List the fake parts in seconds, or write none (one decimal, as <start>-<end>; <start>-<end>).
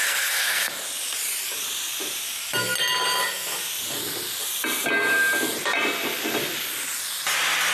0.0-0.7